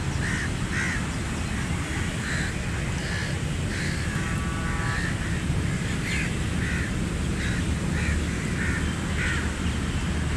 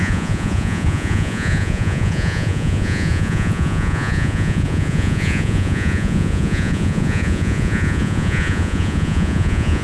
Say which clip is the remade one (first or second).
second